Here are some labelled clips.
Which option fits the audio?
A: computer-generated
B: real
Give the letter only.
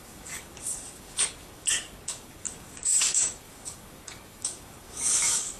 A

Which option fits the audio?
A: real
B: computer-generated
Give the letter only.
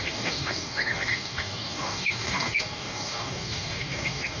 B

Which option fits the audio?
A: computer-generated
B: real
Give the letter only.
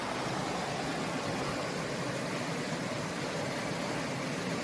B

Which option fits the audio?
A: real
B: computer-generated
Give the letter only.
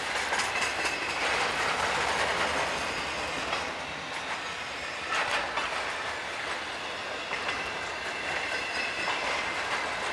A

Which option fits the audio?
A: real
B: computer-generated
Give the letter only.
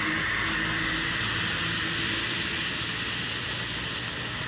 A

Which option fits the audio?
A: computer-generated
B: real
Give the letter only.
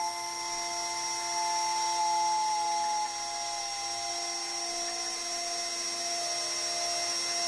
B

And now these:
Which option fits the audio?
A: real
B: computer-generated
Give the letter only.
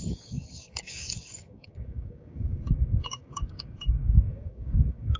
B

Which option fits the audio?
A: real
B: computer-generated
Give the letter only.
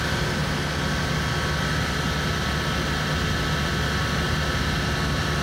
A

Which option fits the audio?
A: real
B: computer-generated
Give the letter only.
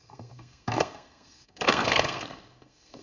B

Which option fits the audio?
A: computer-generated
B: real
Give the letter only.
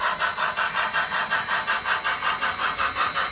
B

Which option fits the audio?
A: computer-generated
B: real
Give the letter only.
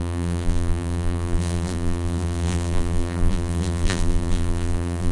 A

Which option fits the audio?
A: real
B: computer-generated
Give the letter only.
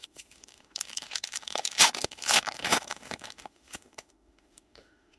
B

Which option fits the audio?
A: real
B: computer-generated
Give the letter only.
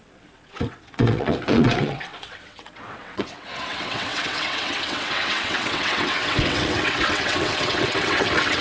B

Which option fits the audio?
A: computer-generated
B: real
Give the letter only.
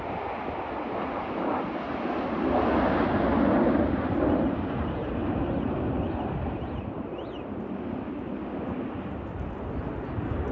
B